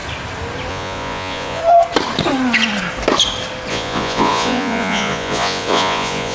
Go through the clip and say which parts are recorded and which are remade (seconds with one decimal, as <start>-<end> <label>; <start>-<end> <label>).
0.0-0.7 recorded; 0.7-1.6 remade; 1.6-3.7 recorded; 3.7-6.3 remade